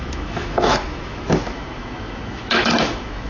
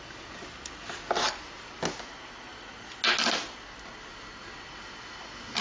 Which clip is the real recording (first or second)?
second